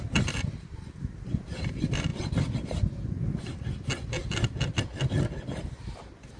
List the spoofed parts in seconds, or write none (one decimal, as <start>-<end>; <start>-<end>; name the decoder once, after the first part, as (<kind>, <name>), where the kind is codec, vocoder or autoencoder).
none